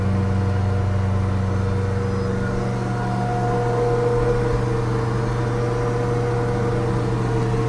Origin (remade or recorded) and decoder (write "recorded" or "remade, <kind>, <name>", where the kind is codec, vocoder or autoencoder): recorded